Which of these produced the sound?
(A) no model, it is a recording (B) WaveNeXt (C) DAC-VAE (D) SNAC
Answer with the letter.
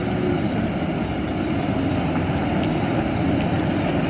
A